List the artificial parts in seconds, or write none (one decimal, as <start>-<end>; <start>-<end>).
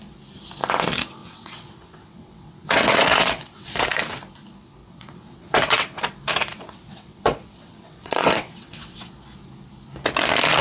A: 1.2-4.2; 4.8-6.0; 6.5-9.1